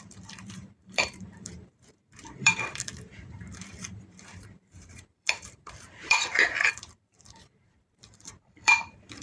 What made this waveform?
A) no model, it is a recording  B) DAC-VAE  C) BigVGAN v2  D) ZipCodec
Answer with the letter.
C